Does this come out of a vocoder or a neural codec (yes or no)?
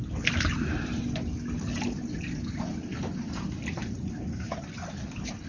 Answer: no